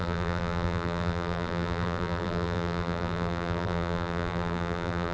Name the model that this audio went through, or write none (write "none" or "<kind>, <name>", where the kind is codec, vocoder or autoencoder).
vocoder, BigVGAN v2